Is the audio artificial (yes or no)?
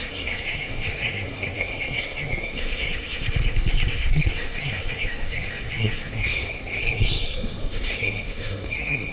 yes